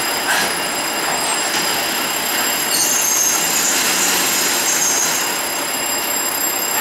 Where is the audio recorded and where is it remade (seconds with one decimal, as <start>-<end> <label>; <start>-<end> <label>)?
0.0-6.8 recorded